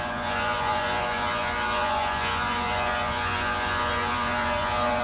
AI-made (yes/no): yes